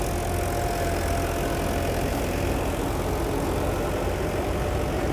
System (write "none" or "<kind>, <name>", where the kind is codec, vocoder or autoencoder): none